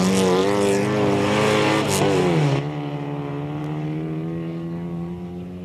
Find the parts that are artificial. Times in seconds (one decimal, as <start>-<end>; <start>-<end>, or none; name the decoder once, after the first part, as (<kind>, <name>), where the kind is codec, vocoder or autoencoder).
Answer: none